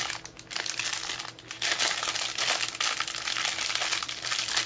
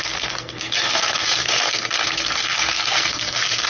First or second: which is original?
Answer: first